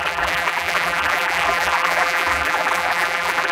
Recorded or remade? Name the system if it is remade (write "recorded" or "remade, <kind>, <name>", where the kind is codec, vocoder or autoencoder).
remade, vocoder, BigVGAN v2